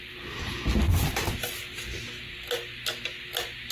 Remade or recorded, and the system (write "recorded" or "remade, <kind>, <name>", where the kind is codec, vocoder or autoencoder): recorded